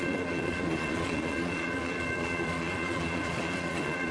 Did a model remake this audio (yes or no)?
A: yes